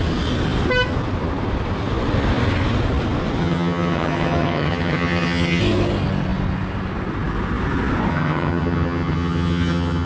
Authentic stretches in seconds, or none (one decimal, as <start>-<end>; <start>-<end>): 0.0-3.4; 5.6-8.1